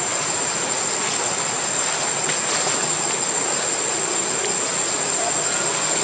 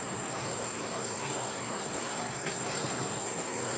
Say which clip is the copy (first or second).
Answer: second